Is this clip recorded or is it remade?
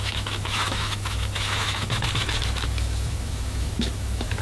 remade